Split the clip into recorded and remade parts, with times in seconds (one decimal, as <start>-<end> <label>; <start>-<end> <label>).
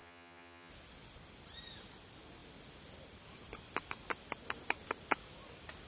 0.0-0.7 remade; 0.7-5.9 recorded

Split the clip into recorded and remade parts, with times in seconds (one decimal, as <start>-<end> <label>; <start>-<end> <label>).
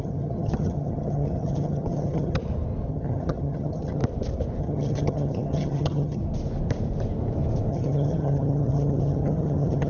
0.0-2.4 remade; 2.4-2.9 recorded; 2.9-4.0 remade; 4.0-4.6 recorded; 4.6-6.2 remade; 6.2-7.7 recorded; 7.7-9.9 remade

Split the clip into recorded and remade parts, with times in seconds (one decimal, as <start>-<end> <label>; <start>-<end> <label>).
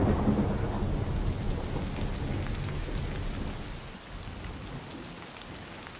0.0-6.0 recorded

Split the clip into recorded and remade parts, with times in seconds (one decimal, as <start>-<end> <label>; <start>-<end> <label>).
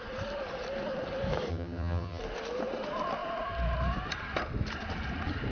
0.0-1.5 recorded; 1.5-2.2 remade; 2.2-5.5 recorded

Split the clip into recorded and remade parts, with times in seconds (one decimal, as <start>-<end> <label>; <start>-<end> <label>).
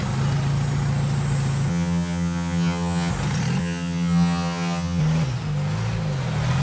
0.0-1.7 recorded; 1.7-3.1 remade; 3.1-3.6 recorded; 3.6-5.0 remade; 5.0-6.6 recorded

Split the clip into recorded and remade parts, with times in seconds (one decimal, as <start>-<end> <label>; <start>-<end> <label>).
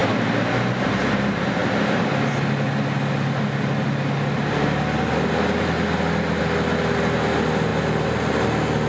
0.0-8.9 recorded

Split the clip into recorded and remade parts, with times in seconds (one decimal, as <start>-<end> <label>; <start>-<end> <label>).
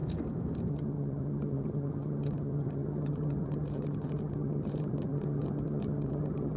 0.0-0.7 recorded; 0.7-6.6 remade